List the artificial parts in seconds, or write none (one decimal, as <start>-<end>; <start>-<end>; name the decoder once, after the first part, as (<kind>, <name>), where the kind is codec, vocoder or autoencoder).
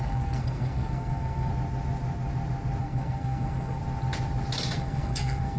0.0-1.5 (codec, SNAC); 2.8-3.8; 4.7-5.6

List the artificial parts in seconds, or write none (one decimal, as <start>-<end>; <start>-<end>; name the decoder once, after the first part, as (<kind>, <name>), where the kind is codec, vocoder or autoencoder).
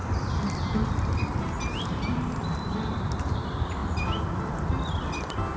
0.0-3.4 (vocoder, BigVGAN v2)